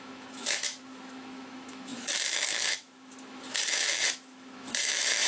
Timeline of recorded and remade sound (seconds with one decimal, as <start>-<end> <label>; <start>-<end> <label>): 0.0-5.3 remade